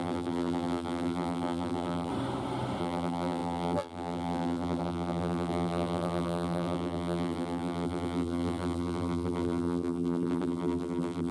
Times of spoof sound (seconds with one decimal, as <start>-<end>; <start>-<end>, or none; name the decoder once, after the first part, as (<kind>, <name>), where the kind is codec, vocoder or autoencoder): 0.0-2.1 (vocoder, BigVGAN v2); 2.8-11.3